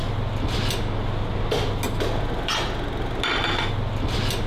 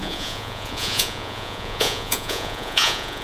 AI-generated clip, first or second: second